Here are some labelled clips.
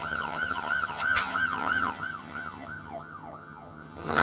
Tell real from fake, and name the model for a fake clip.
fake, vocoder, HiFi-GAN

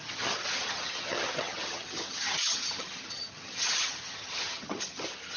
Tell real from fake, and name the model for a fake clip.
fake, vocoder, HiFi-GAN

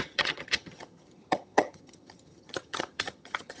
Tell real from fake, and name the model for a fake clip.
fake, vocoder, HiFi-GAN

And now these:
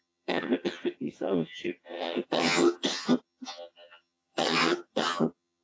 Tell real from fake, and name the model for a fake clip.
fake, vocoder, HiFi-GAN